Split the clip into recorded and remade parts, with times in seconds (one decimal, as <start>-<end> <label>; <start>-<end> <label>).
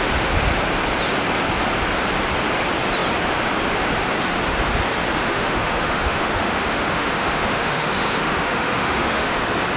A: 0.0-5.2 recorded; 5.2-9.3 remade; 9.3-9.8 recorded